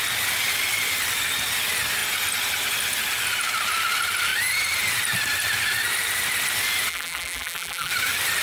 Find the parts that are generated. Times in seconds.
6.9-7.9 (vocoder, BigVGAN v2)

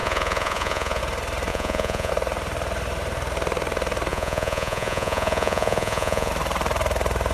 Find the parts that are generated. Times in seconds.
0.0-1.0 (vocoder, Vocos); 1.5-2.1; 4.1-6.3